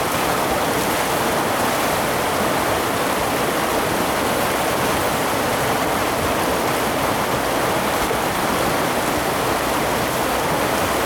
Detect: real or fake real